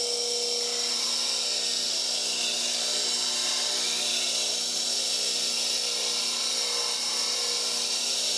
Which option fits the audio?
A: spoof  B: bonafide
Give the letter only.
B